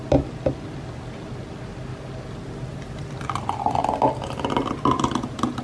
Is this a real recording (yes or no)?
yes